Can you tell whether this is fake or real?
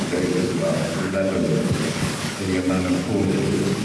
fake